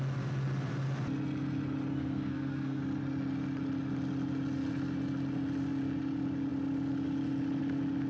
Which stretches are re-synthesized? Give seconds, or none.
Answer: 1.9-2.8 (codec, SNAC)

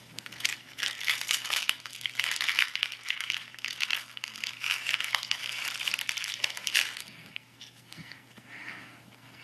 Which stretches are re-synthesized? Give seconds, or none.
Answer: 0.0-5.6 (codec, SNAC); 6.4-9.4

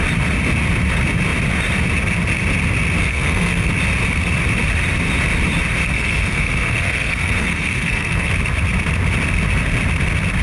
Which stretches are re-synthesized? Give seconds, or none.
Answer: 3.0-3.7 (codec, SNAC); 5.8-8.3

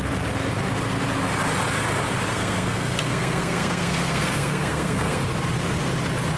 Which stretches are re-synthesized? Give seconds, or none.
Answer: 2.3-5.3 (codec, SNAC)

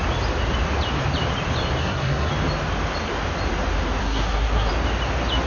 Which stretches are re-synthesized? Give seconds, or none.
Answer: 1.8-2.3 (codec, SNAC); 4.0-4.7

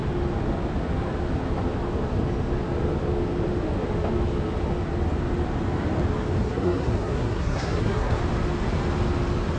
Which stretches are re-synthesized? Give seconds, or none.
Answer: 6.4-8.2 (codec, SNAC)

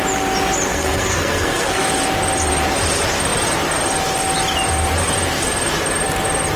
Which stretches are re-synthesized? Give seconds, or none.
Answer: 0.7-1.8 (codec, SNAC)

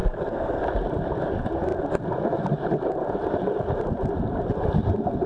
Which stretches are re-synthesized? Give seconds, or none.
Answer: 0.0-0.6 (codec, SNAC)